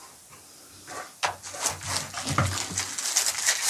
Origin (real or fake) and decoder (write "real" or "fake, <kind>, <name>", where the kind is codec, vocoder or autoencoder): real